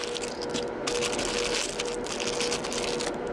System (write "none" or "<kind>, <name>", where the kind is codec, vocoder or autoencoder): none